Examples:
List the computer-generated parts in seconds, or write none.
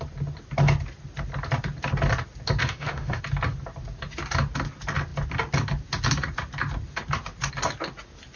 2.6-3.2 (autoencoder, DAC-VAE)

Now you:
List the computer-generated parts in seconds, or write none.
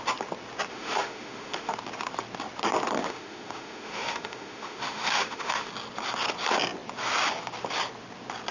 0.7-1.7 (autoencoder, DAC-VAE); 3.0-5.7